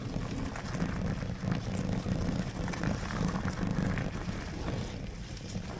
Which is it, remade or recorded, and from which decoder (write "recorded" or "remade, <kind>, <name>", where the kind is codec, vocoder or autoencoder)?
recorded